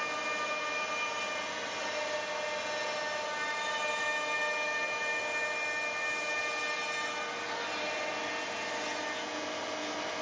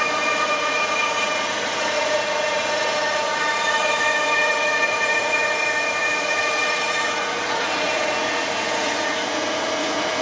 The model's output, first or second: second